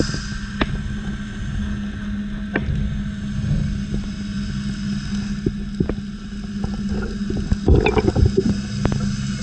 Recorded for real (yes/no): yes